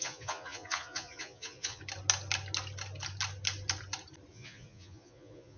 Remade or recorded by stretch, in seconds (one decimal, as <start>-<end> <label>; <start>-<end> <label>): 0.0-1.8 remade; 1.8-4.3 recorded; 4.3-5.6 remade